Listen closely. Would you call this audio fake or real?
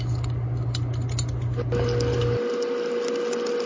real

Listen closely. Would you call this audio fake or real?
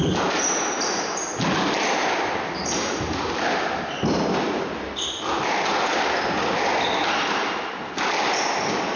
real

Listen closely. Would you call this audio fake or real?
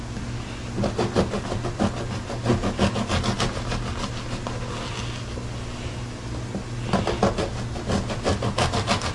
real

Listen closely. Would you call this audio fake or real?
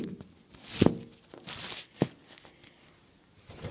real